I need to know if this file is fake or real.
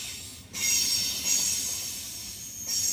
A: real